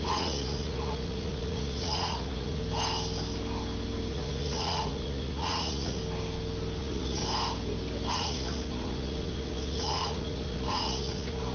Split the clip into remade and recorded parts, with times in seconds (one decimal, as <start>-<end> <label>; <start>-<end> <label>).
0.0-2.6 remade; 2.6-4.1 recorded; 4.1-6.0 remade; 6.0-6.8 recorded; 6.8-7.2 remade; 7.2-8.1 recorded; 8.1-11.5 remade

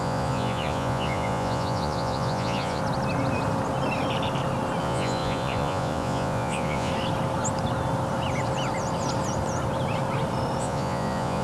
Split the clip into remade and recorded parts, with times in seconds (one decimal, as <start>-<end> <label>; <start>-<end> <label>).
0.0-2.8 remade; 2.8-4.8 recorded; 4.8-6.9 remade; 6.9-10.6 recorded; 10.6-11.4 remade

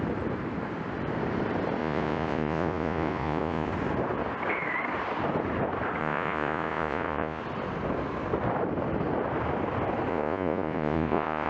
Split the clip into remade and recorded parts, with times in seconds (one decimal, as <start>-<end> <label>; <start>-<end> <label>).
0.0-1.8 recorded; 1.8-3.7 remade; 3.7-6.0 recorded; 6.0-7.4 remade; 7.4-10.1 recorded; 10.1-11.5 remade

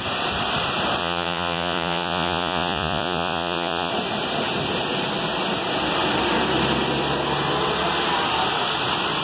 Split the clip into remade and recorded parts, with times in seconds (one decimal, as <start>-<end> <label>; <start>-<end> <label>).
0.0-1.0 recorded; 1.0-3.9 remade; 3.9-9.2 recorded

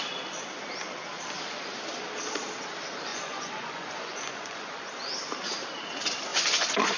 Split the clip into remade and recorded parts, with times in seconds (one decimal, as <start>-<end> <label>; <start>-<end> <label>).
0.0-3.1 recorded; 3.1-4.9 remade; 4.9-6.3 recorded; 6.3-7.0 remade

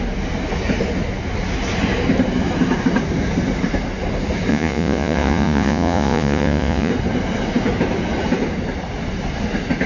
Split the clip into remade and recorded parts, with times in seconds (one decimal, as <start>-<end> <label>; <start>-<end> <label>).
0.0-4.5 recorded; 4.5-6.9 remade; 6.9-9.9 recorded

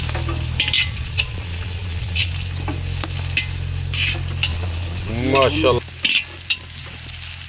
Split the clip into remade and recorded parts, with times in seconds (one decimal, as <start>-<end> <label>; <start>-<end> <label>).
0.0-0.8 recorded; 0.8-2.3 remade; 2.3-4.5 recorded; 4.5-5.1 remade; 5.1-7.5 recorded